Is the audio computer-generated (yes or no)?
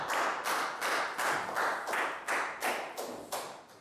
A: no